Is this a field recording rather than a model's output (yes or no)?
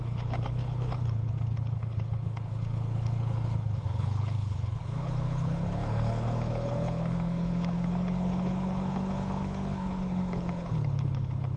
no